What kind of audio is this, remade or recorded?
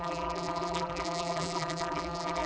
remade